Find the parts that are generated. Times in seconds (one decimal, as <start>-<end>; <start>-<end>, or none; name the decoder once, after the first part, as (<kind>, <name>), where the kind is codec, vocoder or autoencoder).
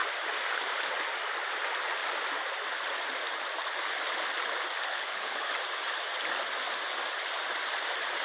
4.9-5.5 (codec, HILCodec)